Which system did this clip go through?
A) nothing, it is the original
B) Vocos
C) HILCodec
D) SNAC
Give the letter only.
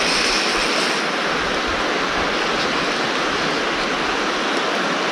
A